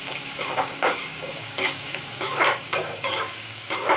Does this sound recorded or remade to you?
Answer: remade